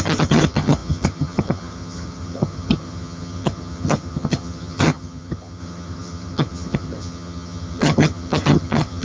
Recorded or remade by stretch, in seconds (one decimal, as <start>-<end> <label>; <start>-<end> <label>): 0.0-9.0 remade